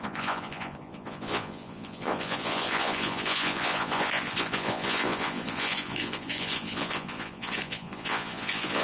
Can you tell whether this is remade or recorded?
remade